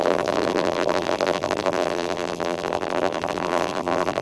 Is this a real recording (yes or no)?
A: no